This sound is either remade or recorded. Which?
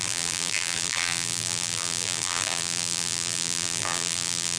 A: remade